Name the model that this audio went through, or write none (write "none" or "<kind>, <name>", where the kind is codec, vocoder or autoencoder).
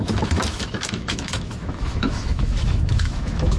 autoencoder, DAC-VAE